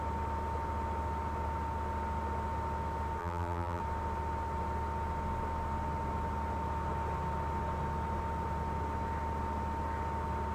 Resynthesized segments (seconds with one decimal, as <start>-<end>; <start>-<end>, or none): 3.2-3.8